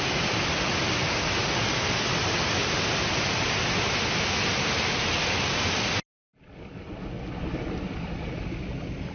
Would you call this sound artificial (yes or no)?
no